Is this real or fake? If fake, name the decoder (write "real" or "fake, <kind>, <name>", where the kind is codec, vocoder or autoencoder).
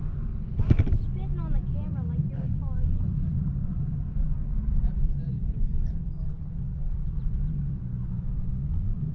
real